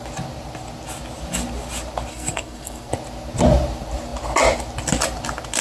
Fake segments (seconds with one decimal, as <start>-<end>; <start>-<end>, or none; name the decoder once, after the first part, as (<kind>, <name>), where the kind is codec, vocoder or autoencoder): 2.1-2.9 (codec, SNAC)